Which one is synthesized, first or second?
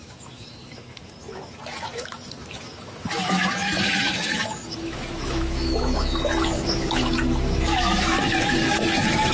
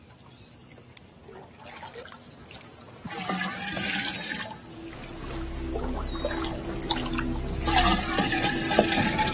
first